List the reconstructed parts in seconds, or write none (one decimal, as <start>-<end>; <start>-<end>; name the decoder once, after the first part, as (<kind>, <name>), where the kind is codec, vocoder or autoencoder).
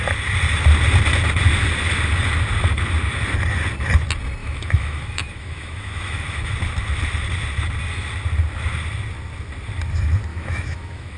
4.4-6.5 (autoencoder, DAC-VAE); 10.3-11.2